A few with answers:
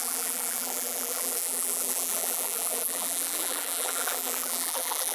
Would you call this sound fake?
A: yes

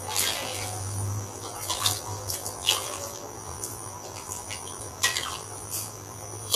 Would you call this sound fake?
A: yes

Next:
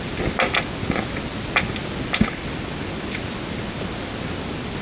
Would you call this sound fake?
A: no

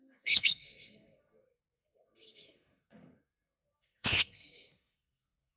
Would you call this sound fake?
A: yes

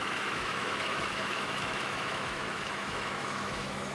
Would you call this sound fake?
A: yes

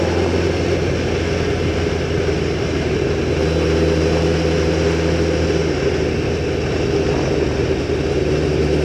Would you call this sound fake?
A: no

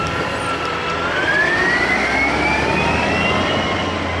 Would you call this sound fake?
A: no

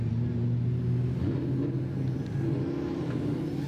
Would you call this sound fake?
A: no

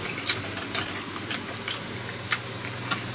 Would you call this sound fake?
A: no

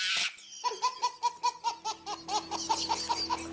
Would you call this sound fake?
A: no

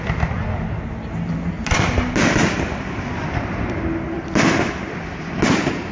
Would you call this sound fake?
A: no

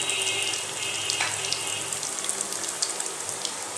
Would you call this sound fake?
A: no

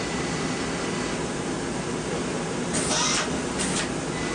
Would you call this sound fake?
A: no